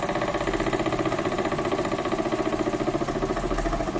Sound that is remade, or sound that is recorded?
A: recorded